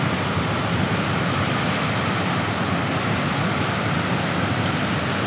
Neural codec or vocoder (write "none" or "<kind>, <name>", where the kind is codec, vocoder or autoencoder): none